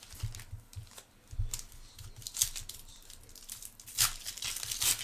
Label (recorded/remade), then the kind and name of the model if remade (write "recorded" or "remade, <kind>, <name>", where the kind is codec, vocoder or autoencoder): recorded